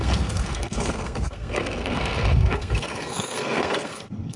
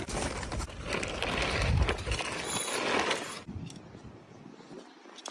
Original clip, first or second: second